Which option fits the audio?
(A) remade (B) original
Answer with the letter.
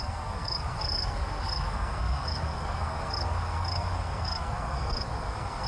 A